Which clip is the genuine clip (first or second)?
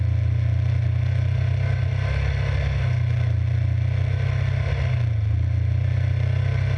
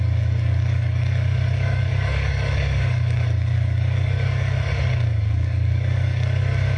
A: first